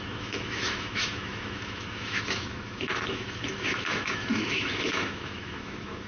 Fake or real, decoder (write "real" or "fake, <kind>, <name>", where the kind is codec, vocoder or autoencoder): fake, autoencoder, DAC-VAE